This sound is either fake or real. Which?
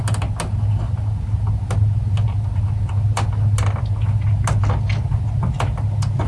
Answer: real